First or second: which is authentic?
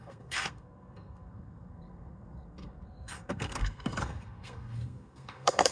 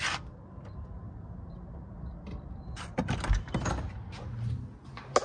second